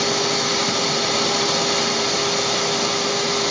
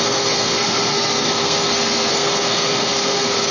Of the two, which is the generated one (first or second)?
second